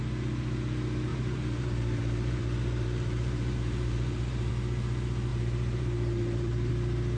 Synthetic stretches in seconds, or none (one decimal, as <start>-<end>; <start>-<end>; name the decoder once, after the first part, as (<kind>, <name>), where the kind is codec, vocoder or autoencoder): 1.1-4.5 (vocoder, BigVGAN v2); 5.3-6.7